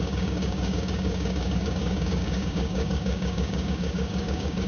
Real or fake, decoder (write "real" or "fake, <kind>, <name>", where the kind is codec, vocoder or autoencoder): fake, codec, DAC